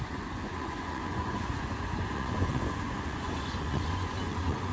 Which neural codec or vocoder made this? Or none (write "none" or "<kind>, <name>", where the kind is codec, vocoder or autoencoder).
vocoder, Vocos